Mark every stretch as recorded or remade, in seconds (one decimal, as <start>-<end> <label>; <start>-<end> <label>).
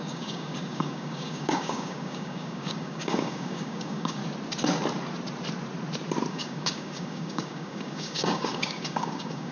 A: 0.0-4.2 remade; 4.2-6.3 recorded; 6.3-9.5 remade